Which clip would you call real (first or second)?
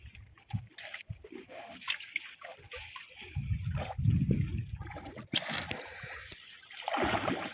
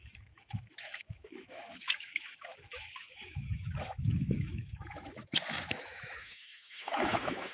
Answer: first